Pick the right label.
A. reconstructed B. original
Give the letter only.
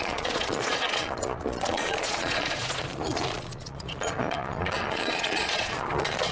A